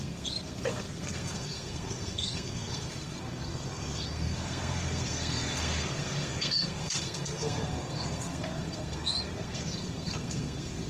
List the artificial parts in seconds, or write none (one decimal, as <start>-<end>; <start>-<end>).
0.0-10.9